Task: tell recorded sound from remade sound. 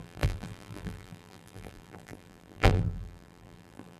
remade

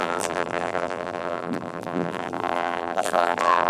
remade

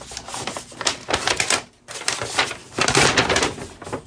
recorded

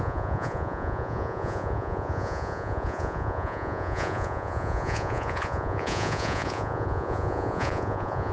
remade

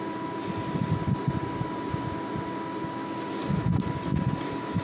recorded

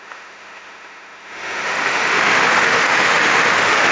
remade